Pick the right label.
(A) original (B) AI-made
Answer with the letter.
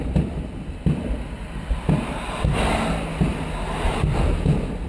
A